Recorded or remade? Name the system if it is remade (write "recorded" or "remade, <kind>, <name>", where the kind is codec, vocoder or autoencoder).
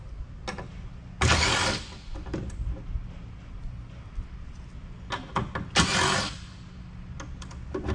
recorded